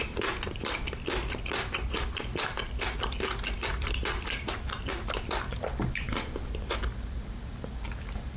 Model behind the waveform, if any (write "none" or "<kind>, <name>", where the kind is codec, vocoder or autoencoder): vocoder, BigVGAN v2